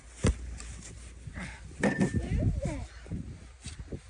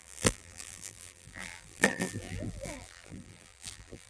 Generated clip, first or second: second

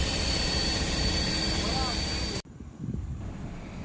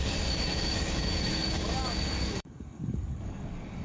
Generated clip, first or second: second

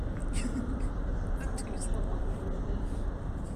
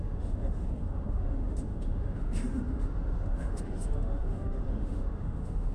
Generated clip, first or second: second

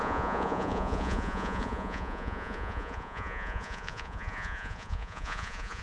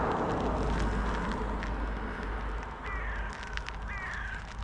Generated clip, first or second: first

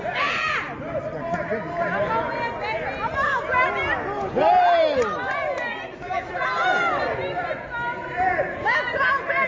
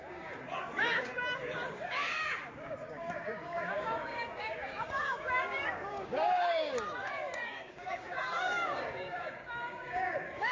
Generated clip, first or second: second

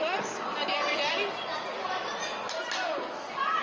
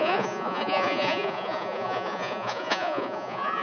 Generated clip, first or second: second